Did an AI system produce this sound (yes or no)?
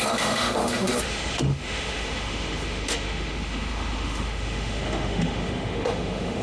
yes